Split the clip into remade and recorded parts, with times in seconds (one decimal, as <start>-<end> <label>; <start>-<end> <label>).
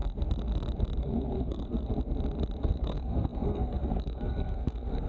0.0-1.0 recorded; 1.0-1.9 remade; 1.9-2.6 recorded; 2.6-5.1 remade